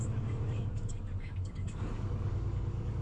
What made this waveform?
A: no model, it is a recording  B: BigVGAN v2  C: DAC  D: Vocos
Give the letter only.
C